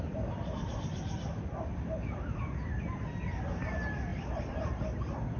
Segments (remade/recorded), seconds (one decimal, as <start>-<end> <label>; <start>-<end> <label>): 0.0-5.4 recorded